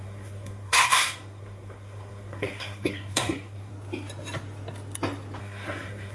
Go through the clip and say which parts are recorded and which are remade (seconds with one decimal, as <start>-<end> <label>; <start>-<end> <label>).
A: 0.0-3.7 remade; 3.7-5.4 recorded; 5.4-6.1 remade